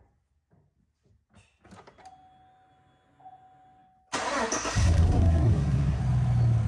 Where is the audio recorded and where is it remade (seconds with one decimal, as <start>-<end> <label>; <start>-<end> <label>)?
0.0-4.8 recorded; 4.8-6.0 remade; 6.0-6.7 recorded